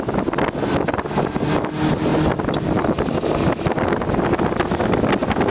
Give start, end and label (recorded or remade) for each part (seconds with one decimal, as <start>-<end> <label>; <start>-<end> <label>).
0.0-5.5 recorded

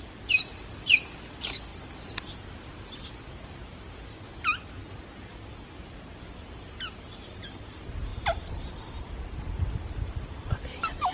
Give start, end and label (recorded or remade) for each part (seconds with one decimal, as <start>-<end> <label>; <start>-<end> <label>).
0.0-11.1 recorded